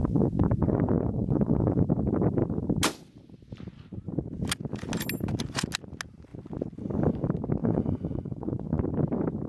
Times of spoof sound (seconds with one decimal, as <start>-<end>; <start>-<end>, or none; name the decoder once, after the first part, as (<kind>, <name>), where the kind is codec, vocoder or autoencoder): 0.0-1.9 (vocoder, Vocos); 7.6-8.8